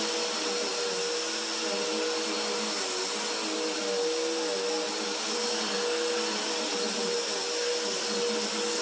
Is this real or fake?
real